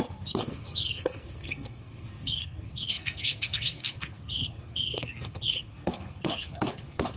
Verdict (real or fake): fake